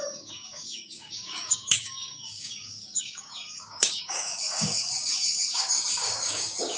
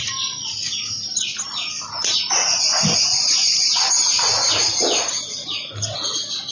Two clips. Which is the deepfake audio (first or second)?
first